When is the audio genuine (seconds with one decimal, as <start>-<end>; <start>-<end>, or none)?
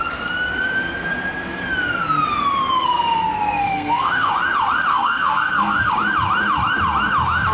0.0-2.8; 4.3-4.9; 5.9-7.5